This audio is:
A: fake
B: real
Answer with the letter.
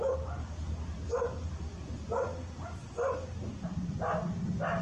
B